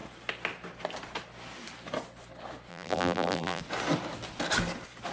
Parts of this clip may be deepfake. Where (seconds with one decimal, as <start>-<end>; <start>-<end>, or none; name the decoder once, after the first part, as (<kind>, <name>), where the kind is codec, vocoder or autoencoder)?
2.7-3.6 (vocoder, BigVGAN v2)